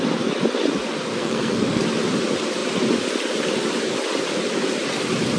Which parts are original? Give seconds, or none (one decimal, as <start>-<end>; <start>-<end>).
0.0-1.1; 1.8-5.4